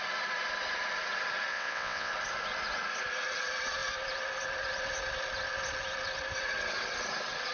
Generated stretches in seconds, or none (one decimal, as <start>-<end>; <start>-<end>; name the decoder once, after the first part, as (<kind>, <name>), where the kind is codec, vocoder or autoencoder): 1.5-2.1 (vocoder, WaveNeXt)